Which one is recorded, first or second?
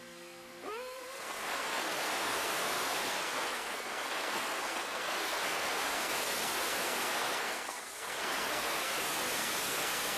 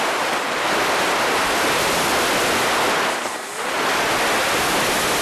second